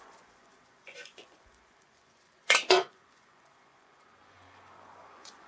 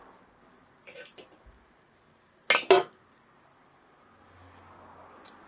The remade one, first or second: first